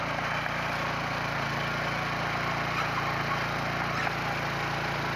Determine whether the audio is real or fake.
real